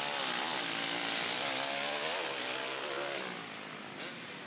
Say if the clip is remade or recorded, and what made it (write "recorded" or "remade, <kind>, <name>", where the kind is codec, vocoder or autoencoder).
recorded